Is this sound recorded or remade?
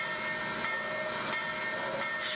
recorded